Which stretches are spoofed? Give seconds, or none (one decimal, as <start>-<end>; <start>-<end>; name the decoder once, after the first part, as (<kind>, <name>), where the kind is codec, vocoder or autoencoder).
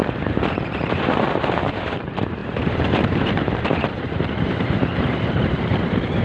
0.5-6.2 (vocoder, BigVGAN v2)